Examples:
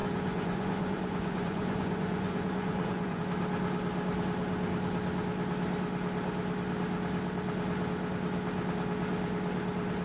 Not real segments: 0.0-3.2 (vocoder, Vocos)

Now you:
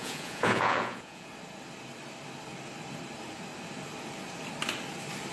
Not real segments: 0.0-1.3 (vocoder, Vocos)

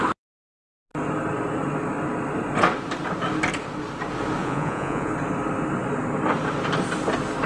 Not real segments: 4.4-5.1 (vocoder, Vocos)

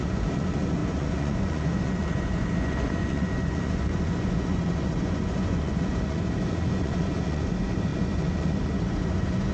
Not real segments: 0.0-9.5 (vocoder, Vocos)

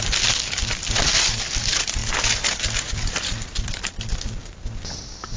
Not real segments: none

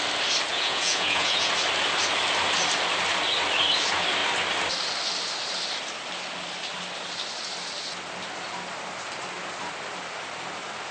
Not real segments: 0.5-1.5 (vocoder, Vocos)

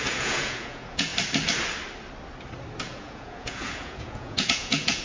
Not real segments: 0.0-1.1 (vocoder, Vocos); 2.8-5.0